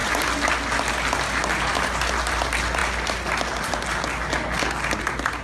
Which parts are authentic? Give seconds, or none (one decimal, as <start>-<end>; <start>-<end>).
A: 0.0-5.4